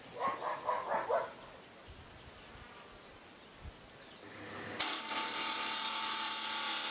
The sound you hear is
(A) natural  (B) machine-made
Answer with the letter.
A